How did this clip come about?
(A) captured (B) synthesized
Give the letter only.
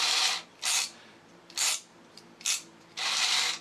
B